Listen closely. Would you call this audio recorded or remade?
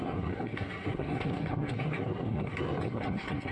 remade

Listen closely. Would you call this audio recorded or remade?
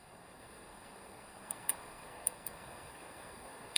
remade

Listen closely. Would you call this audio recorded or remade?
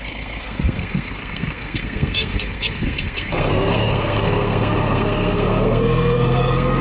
remade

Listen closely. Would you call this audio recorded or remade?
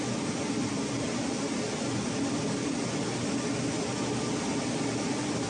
recorded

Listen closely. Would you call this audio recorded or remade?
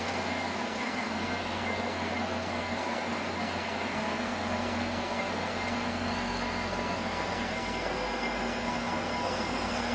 remade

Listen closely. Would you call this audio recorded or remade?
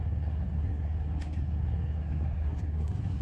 remade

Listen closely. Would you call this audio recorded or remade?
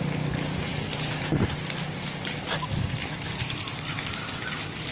recorded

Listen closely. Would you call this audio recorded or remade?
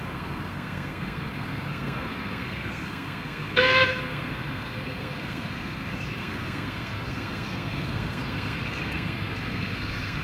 remade